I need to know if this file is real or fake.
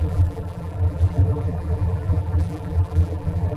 fake